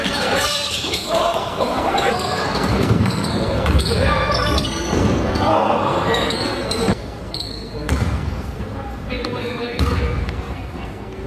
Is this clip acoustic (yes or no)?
no